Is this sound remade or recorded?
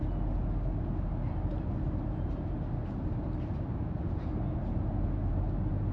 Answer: recorded